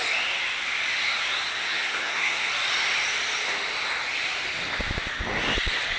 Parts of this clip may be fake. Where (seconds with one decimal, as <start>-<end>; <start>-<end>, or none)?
1.5-2.5